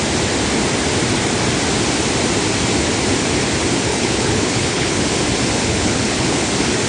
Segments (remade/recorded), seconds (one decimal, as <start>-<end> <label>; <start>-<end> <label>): 0.0-3.9 recorded; 3.9-5.0 remade; 5.0-5.6 recorded; 5.6-6.5 remade; 6.5-6.9 recorded